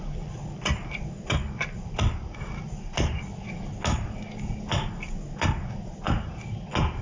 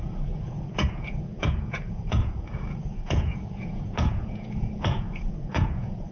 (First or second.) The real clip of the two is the first